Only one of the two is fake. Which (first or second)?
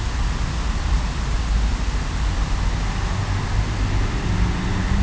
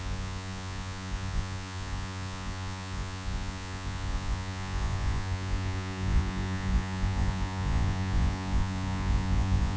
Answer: second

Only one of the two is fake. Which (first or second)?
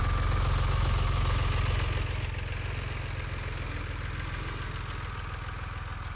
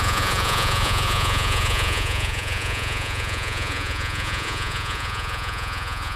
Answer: second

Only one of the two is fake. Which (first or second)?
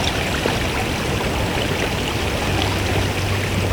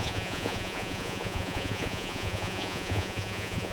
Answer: second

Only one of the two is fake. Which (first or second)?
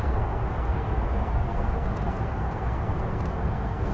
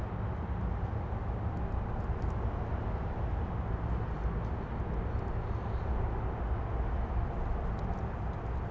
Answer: first